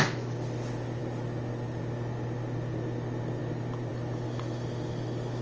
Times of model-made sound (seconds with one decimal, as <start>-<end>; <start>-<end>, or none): none